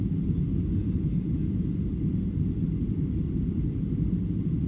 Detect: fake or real real